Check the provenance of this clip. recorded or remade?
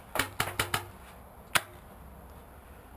recorded